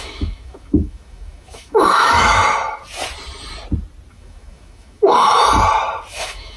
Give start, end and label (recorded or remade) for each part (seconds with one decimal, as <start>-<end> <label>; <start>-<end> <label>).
0.0-2.4 remade; 2.4-4.1 recorded; 4.1-5.4 remade; 5.4-6.1 recorded; 6.1-6.6 remade